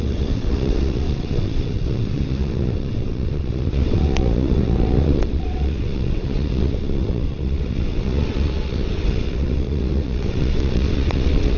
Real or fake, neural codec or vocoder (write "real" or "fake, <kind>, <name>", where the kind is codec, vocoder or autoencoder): fake, vocoder, WaveNeXt